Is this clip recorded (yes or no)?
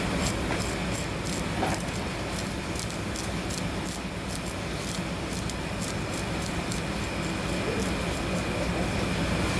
yes